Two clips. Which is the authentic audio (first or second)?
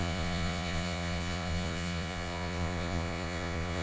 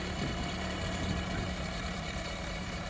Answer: second